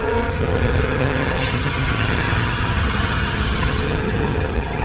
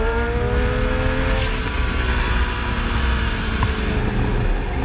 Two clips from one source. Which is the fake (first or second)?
first